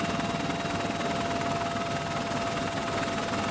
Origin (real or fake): real